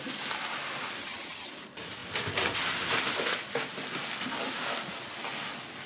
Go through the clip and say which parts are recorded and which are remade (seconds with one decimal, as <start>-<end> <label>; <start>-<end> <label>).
0.0-1.0 recorded; 1.0-1.5 remade; 1.5-5.9 recorded